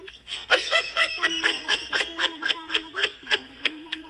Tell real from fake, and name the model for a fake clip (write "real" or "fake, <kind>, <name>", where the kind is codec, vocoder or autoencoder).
fake, codec, SNAC